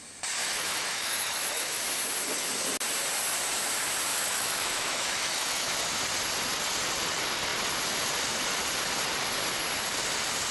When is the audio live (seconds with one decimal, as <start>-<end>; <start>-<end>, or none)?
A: 0.0-0.4; 1.8-4.1; 6.0-10.5

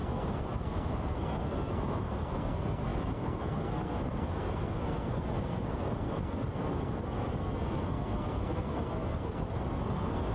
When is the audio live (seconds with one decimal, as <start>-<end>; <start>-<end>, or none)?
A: none

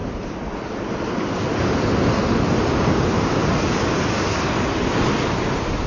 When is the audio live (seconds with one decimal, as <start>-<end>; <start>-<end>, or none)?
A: 0.0-5.9

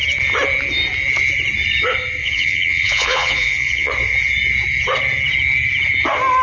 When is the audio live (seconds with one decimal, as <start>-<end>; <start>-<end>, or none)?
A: 0.0-2.2; 3.9-6.4

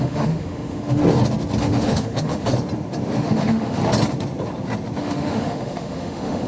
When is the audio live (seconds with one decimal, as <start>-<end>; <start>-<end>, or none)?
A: 1.0-1.6; 2.5-3.2; 3.8-5.0

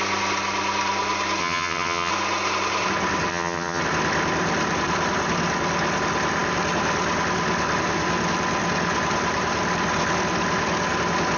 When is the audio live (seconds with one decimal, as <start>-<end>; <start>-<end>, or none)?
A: 0.0-1.4; 2.1-3.3; 3.8-11.4